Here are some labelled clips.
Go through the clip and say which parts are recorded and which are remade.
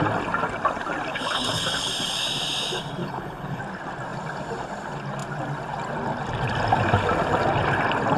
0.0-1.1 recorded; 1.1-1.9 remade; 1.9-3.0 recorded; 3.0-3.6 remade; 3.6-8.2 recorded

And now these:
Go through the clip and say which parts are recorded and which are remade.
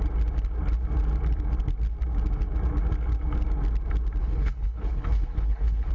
0.0-4.2 recorded; 4.2-5.9 remade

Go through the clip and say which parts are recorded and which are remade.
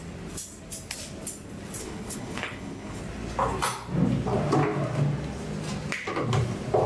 0.0-1.8 recorded; 1.8-3.0 remade; 3.0-6.9 recorded